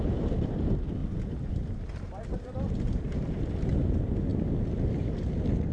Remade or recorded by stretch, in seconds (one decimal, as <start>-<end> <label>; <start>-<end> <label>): 0.0-5.7 recorded